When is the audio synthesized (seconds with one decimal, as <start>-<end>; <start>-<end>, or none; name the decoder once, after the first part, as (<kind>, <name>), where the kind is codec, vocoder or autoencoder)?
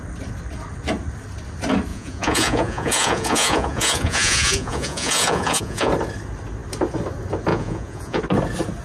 1.9-5.9 (vocoder, Vocos); 7.5-8.2